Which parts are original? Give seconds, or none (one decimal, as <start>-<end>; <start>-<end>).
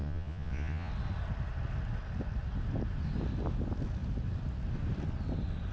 0.9-5.7